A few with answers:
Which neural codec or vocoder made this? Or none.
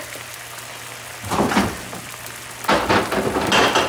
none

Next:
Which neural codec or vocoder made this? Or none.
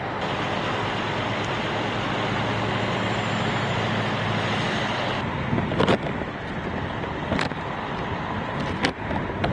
none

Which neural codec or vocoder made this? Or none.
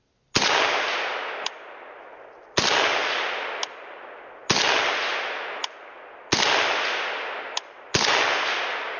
none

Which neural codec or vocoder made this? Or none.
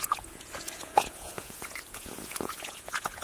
vocoder, Vocos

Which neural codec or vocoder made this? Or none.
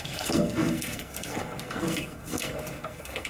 codec, SNAC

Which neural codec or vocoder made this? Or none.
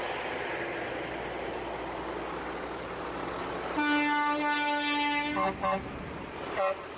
none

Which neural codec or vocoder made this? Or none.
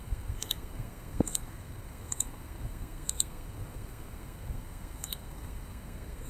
codec, SNAC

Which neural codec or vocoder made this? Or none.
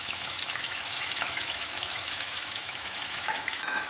autoencoder, DAC-VAE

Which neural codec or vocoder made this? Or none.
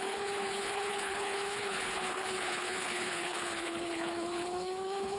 codec, HILCodec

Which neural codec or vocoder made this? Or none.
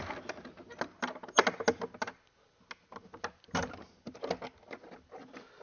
none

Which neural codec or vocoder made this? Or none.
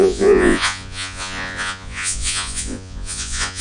vocoder, Vocos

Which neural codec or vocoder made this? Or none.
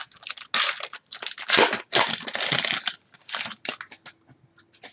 none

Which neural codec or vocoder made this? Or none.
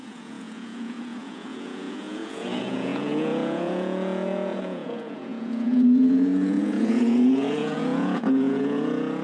vocoder, Vocos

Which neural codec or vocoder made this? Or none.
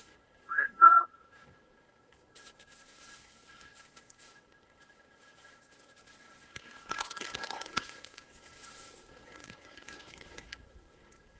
codec, SNAC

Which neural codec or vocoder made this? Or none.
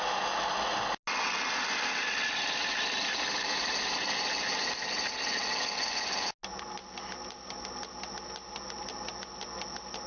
none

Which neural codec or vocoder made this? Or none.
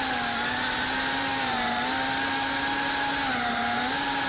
none